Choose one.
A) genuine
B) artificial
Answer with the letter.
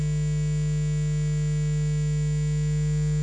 A